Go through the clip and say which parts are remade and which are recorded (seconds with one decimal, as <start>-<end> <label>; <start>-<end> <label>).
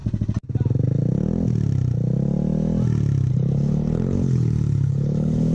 0.0-3.3 recorded; 3.3-5.5 remade